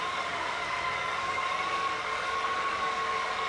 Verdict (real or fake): fake